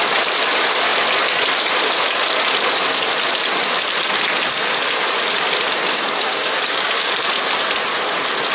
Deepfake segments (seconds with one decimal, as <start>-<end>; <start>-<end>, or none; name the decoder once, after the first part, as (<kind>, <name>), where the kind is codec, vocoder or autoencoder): 6.3-7.1 (codec, DAC)

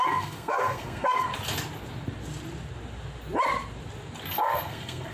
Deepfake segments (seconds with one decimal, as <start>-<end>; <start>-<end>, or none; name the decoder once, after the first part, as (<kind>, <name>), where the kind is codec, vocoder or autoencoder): 0.0-1.3 (codec, SNAC); 4.3-5.1

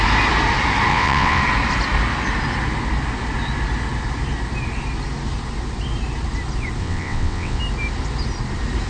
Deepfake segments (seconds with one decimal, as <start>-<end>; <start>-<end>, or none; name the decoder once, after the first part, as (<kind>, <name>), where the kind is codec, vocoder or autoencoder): 0.9-1.4 (vocoder, WaveNeXt); 6.8-7.6